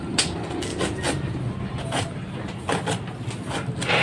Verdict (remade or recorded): recorded